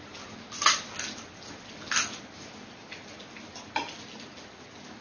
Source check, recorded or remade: recorded